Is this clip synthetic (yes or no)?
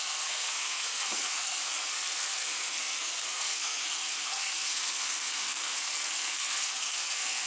yes